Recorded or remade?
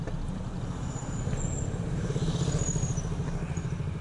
recorded